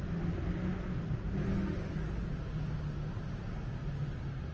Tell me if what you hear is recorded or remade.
recorded